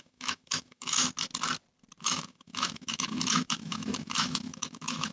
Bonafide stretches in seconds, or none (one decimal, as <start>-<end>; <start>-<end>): 1.0-2.0